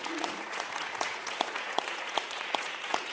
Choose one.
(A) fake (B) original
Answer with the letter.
A